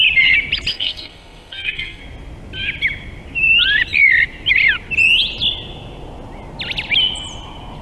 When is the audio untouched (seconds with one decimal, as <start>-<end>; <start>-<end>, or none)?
0.0-0.7; 2.0-7.8